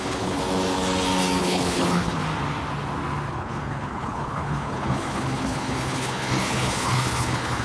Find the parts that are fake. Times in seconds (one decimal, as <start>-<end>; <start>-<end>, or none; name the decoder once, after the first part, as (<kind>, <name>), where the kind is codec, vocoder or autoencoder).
0.0-0.4 (codec, HILCodec); 1.4-2.2; 3.3-7.6